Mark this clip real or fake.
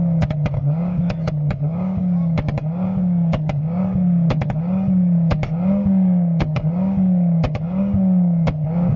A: fake